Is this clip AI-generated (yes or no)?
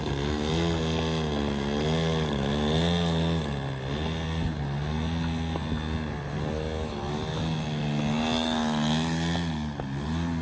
no